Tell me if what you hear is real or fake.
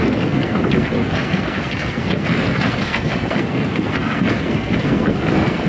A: fake